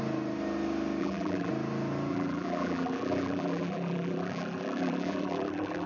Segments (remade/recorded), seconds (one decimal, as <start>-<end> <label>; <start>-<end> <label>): 0.0-1.0 recorded; 1.0-1.5 remade; 1.5-2.1 recorded; 2.1-5.9 remade